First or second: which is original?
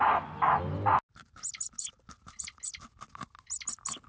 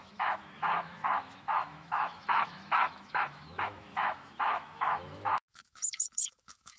first